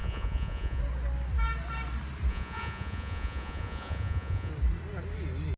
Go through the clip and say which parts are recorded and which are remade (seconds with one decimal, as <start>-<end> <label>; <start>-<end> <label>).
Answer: 0.0-0.8 remade; 0.8-2.3 recorded; 2.3-4.5 remade; 4.5-5.6 recorded